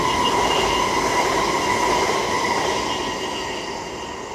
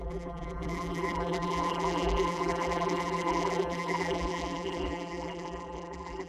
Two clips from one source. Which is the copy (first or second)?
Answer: second